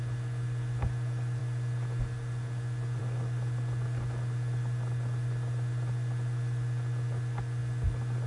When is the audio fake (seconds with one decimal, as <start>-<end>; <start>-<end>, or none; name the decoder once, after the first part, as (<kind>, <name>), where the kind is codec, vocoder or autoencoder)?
none